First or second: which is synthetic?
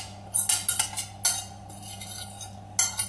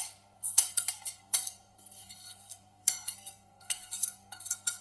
second